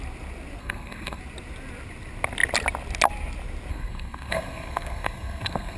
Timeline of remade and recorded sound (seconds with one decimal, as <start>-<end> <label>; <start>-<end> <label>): 0.0-0.6 recorded; 0.6-1.2 remade; 1.2-3.7 recorded; 3.7-5.8 remade